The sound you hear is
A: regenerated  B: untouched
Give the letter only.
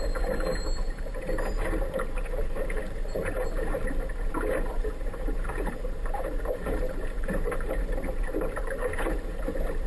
A